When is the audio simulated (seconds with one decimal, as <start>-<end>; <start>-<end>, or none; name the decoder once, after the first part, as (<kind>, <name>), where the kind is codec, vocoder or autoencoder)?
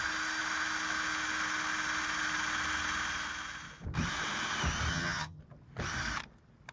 4.9-5.4 (vocoder, HiFi-GAN)